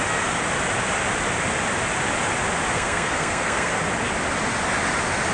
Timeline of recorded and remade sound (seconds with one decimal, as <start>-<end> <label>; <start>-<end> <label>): 0.0-2.7 recorded; 2.7-3.7 remade; 3.7-5.3 recorded